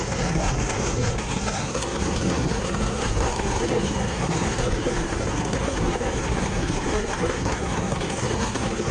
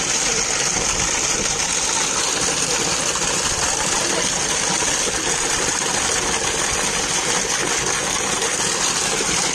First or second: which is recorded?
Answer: second